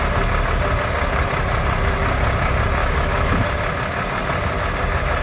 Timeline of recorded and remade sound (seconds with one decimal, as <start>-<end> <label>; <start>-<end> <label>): 0.0-2.8 recorded; 2.8-3.3 remade; 3.3-5.2 recorded